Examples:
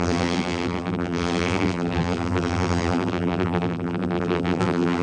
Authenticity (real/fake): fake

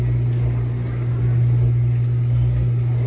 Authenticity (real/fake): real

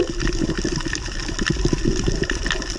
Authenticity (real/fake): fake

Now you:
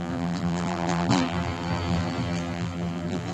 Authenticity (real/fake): fake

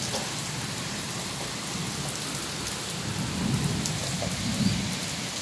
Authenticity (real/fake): real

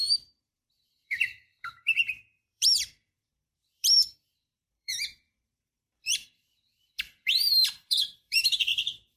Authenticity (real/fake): fake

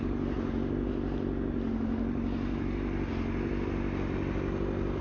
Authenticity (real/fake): real